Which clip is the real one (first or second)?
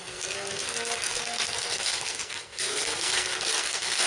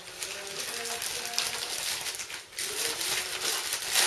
second